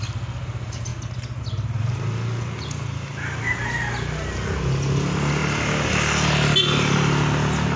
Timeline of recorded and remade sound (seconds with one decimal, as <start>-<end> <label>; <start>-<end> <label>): 0.0-7.8 recorded